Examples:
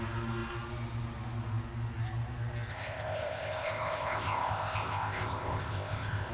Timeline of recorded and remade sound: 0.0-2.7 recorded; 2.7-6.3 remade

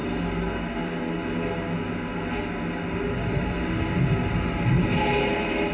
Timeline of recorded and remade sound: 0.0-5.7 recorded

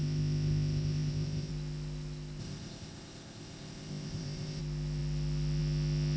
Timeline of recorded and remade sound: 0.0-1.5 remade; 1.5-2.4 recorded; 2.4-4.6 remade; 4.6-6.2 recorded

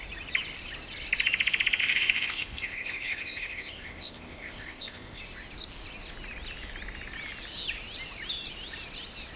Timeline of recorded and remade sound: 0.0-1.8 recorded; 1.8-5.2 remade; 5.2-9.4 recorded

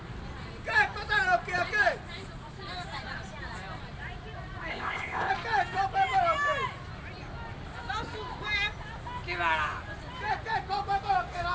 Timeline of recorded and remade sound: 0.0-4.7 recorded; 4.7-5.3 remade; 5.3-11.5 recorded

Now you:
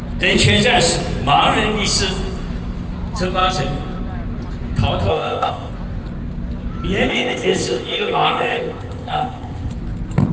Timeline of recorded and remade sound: 0.0-5.1 recorded; 5.1-5.7 remade; 5.7-7.1 recorded; 7.1-9.7 remade; 9.7-10.3 recorded

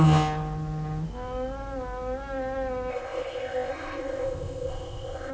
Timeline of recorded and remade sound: 0.0-2.9 recorded; 2.9-5.3 remade